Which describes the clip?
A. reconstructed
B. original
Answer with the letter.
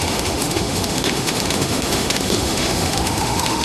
A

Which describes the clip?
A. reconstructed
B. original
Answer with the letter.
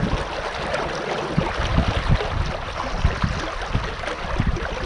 B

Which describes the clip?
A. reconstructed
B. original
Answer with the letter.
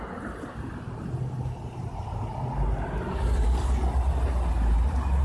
B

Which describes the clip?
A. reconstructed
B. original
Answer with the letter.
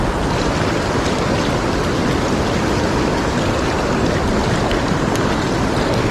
B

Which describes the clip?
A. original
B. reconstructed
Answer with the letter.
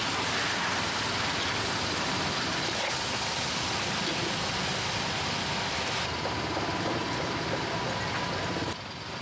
A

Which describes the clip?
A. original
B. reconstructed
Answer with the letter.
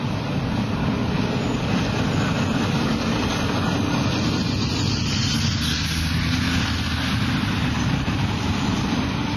A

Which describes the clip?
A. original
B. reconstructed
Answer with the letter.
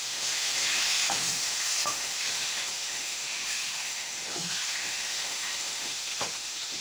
B